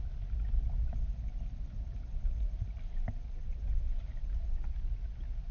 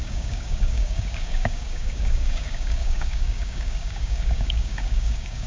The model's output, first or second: second